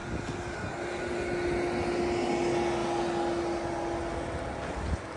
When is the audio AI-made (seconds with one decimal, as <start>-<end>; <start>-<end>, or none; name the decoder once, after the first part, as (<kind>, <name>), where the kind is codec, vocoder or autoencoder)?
none